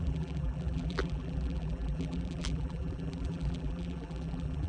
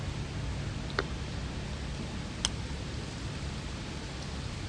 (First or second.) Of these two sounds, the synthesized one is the first